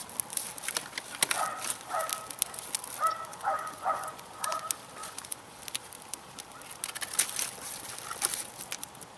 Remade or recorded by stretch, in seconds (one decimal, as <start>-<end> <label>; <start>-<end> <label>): 0.0-3.3 recorded; 3.3-4.6 remade; 4.6-5.0 recorded; 5.0-5.6 remade; 5.6-9.2 recorded